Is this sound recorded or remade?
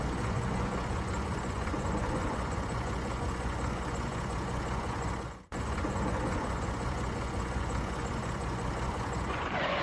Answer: remade